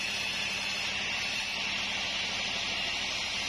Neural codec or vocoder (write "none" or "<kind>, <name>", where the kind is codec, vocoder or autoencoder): none